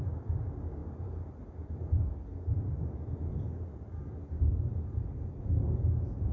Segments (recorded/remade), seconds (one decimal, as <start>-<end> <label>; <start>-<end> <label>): 0.0-0.8 recorded; 0.8-2.0 remade; 2.0-6.3 recorded